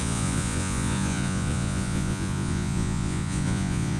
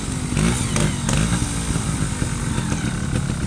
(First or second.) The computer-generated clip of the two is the first